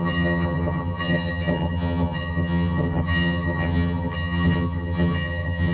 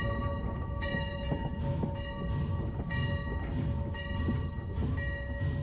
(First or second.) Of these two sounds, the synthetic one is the first